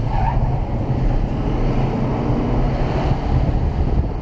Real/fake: real